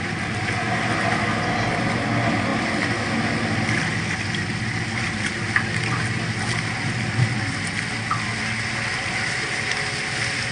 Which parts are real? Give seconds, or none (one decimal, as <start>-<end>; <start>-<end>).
0.0-10.5